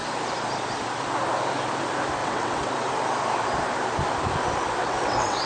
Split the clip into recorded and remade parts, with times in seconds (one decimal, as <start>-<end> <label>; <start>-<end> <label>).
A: 0.0-2.2 recorded; 2.2-2.7 remade; 2.7-4.8 recorded; 4.8-5.5 remade